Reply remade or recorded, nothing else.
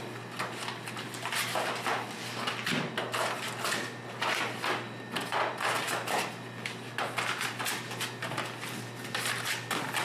recorded